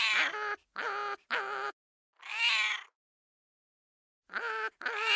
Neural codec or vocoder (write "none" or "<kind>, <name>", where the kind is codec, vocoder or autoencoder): none